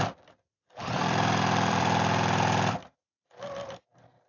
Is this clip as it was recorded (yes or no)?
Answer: no